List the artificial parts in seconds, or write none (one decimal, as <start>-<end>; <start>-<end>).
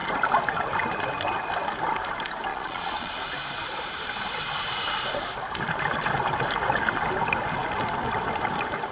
2.5-3.1